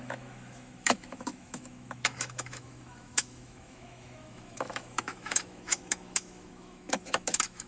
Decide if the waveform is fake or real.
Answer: fake